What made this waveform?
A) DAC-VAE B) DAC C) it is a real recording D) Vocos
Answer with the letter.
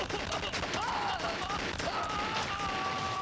C